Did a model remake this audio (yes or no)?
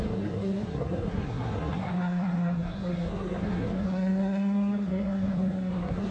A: yes